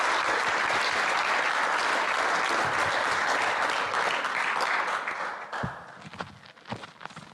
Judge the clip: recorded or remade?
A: recorded